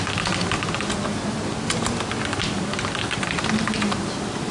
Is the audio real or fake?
real